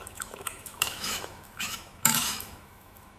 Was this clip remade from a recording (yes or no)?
yes